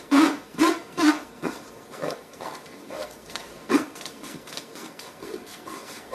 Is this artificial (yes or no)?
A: yes